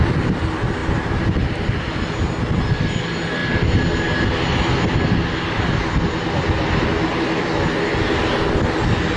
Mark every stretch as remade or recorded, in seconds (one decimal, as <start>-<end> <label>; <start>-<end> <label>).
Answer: 0.0-9.2 recorded